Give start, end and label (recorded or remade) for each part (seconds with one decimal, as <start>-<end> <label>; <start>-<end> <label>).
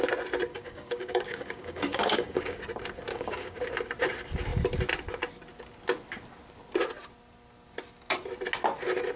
0.0-0.5 recorded; 0.5-2.6 remade; 2.6-3.1 recorded; 3.1-3.6 remade; 3.6-9.2 recorded